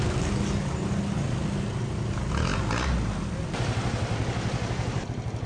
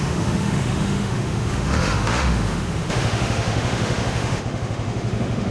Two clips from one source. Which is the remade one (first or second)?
second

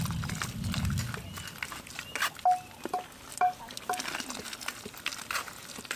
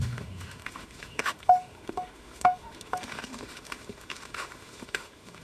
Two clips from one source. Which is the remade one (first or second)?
second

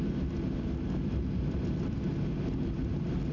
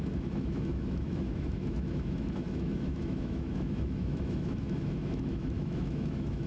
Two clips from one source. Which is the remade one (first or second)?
second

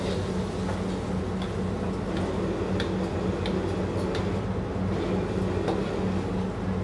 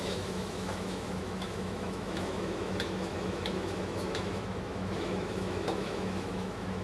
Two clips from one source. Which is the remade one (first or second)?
second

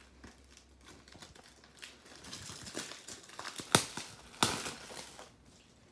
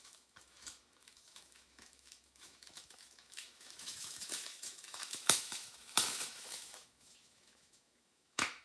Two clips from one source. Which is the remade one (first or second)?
second